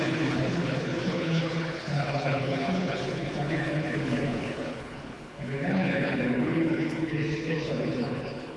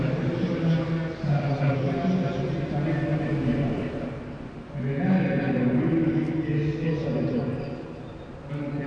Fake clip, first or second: first